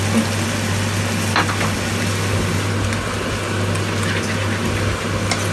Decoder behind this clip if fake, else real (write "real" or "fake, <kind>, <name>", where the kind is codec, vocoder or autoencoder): real